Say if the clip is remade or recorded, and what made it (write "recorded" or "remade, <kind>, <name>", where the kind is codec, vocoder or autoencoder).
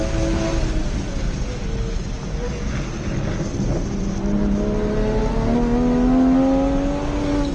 recorded